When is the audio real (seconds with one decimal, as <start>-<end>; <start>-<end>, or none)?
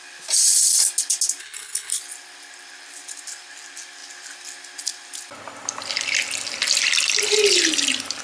0.0-1.4; 2.0-8.2